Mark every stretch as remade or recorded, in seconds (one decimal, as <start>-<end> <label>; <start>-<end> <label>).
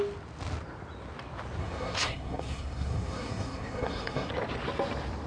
0.0-1.6 recorded; 1.6-4.3 remade; 4.3-5.3 recorded